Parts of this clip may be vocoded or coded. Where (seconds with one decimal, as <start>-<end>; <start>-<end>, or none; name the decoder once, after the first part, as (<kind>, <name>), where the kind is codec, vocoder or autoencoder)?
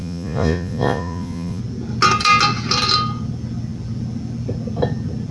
0.0-1.6 (vocoder, Vocos)